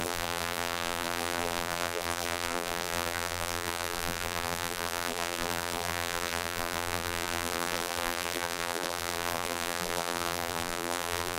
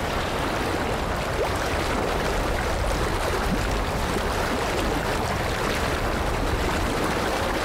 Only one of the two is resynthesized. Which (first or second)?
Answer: first